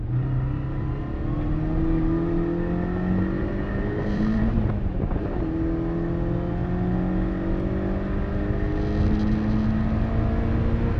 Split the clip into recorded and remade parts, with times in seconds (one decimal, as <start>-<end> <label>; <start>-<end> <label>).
0.0-3.4 recorded; 3.4-5.4 remade; 5.4-11.0 recorded